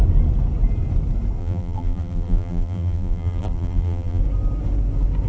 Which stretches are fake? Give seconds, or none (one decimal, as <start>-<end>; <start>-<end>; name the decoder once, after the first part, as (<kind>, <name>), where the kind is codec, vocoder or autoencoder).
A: 1.4-4.2 (vocoder, BigVGAN v2)